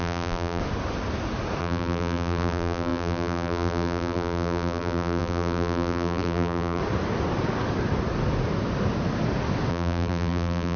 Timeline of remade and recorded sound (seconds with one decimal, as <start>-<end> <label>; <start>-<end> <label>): 0.0-0.6 remade; 0.6-1.6 recorded; 1.6-6.8 remade; 6.8-9.7 recorded; 9.7-10.8 remade